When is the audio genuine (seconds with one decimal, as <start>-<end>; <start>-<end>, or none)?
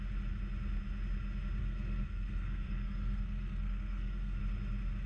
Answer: 0.0-1.6; 4.4-5.1